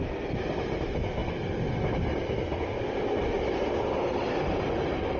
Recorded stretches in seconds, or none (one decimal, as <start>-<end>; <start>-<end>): 0.0-5.2

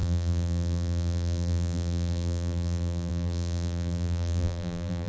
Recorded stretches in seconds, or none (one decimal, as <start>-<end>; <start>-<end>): none

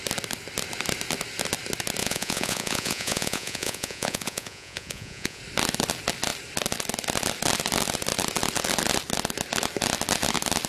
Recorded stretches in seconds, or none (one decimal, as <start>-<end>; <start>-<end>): 0.0-2.0; 5.4-10.7

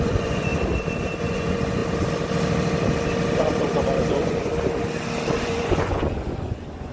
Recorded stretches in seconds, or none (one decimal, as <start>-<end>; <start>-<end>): 0.5-1.2; 1.8-4.1; 4.5-5.4

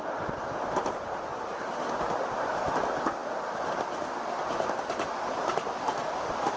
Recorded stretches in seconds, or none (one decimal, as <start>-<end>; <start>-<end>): 0.0-6.6

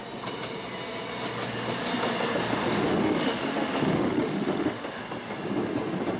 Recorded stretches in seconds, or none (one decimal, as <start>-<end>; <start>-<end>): 0.0-2.9; 5.0-6.2

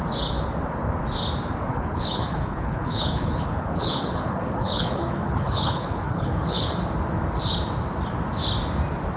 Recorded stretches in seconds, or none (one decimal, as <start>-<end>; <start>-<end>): 0.0-1.7; 6.8-9.2

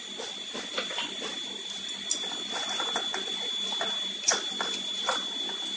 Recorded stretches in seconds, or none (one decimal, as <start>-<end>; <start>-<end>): 0.0-5.8